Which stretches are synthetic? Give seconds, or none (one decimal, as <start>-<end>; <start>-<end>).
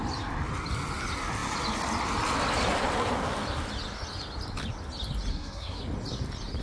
5.3-5.8